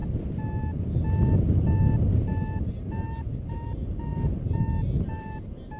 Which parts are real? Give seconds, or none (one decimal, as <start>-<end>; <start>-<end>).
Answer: 0.0-3.5; 4.1-5.0

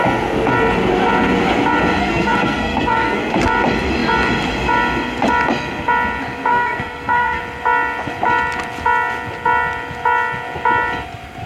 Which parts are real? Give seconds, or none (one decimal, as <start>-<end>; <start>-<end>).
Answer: 0.0-2.0; 3.3-6.5; 7.4-11.5

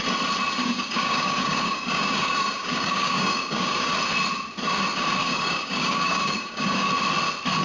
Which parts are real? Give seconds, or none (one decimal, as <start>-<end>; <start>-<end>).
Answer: 0.0-0.6; 3.9-5.2; 6.9-7.6

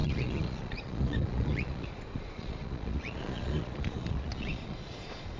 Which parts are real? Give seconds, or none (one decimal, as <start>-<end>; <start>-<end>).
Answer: none

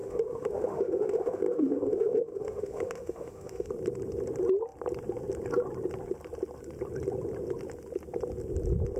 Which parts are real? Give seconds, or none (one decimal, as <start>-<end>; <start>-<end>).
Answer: 3.7-9.0

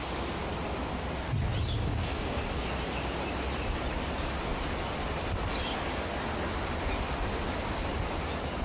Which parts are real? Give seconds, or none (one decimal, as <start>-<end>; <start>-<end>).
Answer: 0.0-1.9; 2.4-8.6

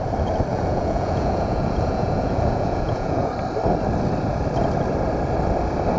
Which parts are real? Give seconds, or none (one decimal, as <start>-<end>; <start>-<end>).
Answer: 0.0-0.5; 3.3-6.0

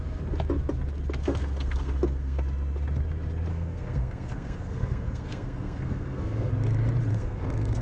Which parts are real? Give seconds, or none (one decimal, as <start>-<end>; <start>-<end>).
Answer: 0.0-1.2; 2.4-3.5; 6.5-7.1